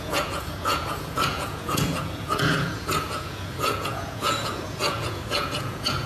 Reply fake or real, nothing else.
fake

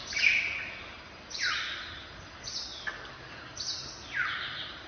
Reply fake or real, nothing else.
real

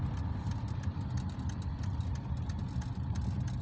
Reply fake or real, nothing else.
real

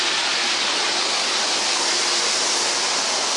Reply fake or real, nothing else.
real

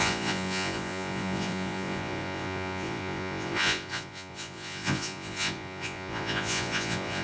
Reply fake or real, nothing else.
fake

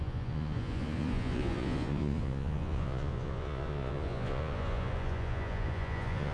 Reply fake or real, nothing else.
fake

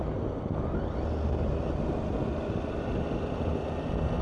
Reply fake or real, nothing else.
real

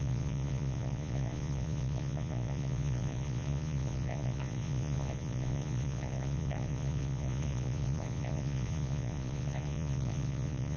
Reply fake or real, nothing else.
fake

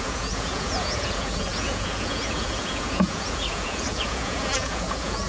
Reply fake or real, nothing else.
fake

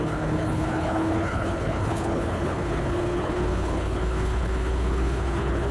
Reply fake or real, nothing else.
fake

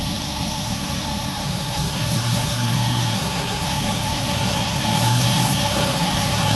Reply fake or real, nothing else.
fake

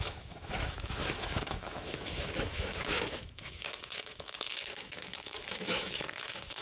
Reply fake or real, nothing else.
fake